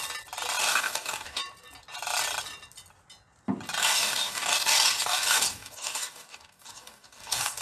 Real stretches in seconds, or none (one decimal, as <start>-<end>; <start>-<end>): 0.0-0.6; 1.4-3.8